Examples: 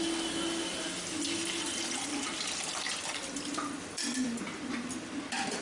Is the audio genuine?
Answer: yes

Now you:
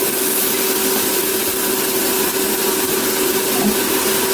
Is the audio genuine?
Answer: yes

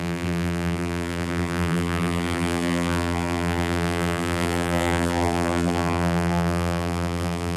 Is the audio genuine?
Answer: no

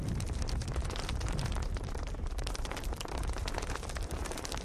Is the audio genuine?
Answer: no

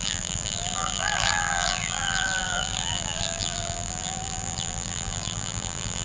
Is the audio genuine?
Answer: no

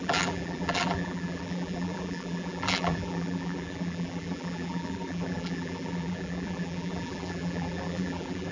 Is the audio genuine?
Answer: no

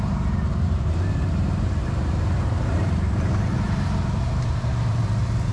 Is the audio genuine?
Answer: no